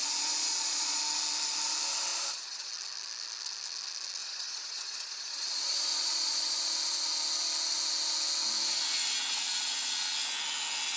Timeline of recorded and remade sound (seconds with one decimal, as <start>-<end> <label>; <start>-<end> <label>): 0.0-1.0 remade; 1.0-2.1 recorded; 2.1-2.7 remade; 2.7-4.2 recorded; 4.2-6.6 remade; 6.6-11.0 recorded